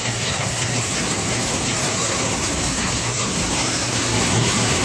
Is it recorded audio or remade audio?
remade